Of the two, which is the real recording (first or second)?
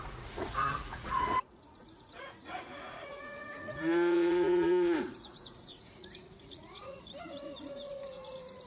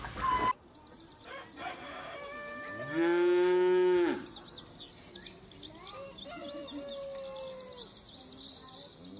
second